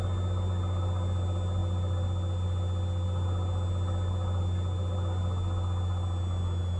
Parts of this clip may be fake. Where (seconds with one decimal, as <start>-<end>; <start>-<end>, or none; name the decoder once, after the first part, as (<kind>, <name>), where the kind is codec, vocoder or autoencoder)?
none